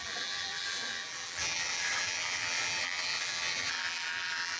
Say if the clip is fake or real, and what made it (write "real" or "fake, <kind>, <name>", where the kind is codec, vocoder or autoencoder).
fake, vocoder, BigVGAN v2